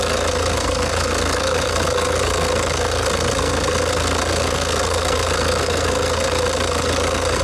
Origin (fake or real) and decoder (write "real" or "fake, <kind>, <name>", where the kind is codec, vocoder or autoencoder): fake, codec, SNAC